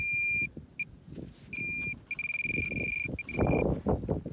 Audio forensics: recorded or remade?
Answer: recorded